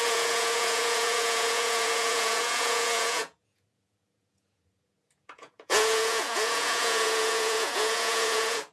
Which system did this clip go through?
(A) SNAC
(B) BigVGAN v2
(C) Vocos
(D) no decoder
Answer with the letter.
C